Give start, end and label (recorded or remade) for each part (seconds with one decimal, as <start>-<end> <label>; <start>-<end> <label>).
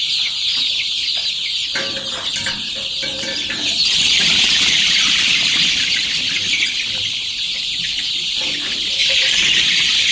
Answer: 0.0-2.3 recorded; 2.3-5.4 remade; 5.4-9.0 recorded; 9.0-9.6 remade; 9.6-10.1 recorded